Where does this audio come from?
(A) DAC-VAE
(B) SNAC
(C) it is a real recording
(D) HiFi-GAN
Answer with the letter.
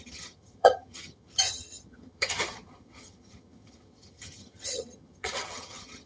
D